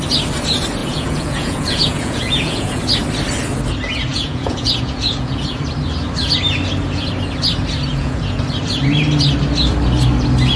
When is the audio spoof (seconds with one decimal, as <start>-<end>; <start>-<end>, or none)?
0.8-2.8; 4.1-5.6; 7.9-8.4